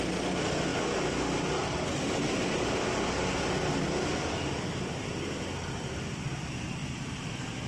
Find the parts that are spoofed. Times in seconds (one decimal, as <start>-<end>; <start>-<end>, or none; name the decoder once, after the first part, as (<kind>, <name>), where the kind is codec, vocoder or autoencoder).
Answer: 6.8-7.7 (vocoder, BigVGAN v2)